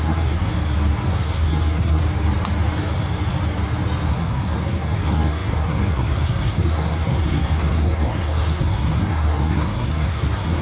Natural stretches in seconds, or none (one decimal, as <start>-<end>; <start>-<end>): 0.5-1.1; 2.0-4.1